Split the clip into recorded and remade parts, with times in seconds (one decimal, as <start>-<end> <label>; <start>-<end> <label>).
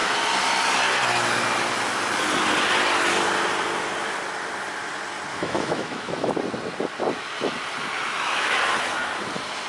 0.0-5.3 recorded; 5.3-6.3 remade; 6.3-8.1 recorded; 8.1-8.6 remade; 8.6-9.7 recorded